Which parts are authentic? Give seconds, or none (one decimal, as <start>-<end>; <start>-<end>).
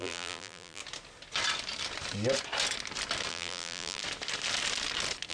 0.8-3.3; 4.0-5.3